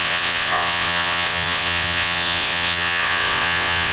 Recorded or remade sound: remade